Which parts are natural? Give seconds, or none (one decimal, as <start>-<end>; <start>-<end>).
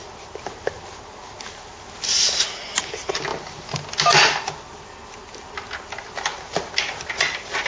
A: 0.0-7.7